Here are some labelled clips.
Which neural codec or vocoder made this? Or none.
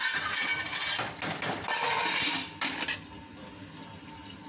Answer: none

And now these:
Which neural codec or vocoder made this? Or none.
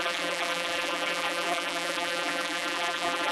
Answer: vocoder, BigVGAN v2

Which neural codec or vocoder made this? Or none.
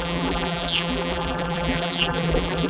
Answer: vocoder, BigVGAN v2